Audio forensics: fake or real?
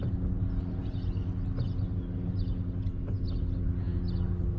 real